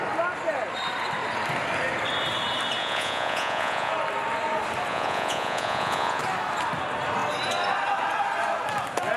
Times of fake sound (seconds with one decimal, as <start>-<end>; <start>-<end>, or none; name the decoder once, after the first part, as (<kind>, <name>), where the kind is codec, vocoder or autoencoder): 2.8-3.9 (vocoder, Vocos); 4.9-6.2